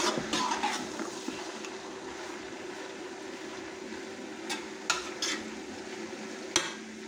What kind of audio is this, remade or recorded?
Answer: recorded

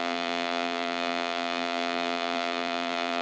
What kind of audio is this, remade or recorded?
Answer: remade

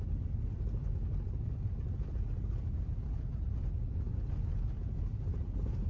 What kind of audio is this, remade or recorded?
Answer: recorded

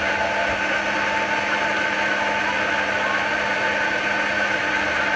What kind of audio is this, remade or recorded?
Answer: recorded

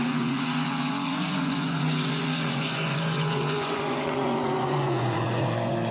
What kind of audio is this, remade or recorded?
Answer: remade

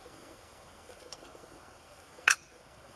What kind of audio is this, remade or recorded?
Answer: remade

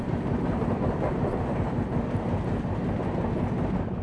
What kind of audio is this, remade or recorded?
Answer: recorded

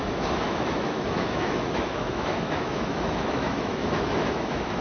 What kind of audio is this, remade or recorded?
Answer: remade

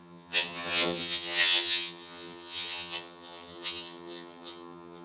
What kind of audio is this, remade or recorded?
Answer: remade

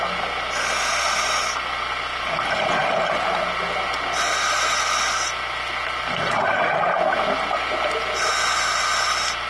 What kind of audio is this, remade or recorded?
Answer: recorded